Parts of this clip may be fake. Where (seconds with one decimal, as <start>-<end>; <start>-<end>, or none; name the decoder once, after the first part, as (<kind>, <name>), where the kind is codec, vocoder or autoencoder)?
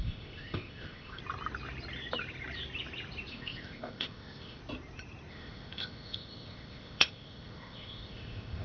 0.0-1.2 (codec, ZipCodec); 3.3-4.6; 5.3-8.6